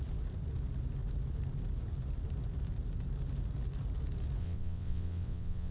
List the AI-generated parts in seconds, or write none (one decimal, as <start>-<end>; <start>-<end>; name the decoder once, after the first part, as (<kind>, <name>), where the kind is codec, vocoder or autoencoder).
4.4-5.7 (vocoder, WaveNeXt)